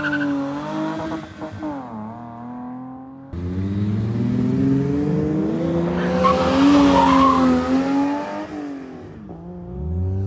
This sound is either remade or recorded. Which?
recorded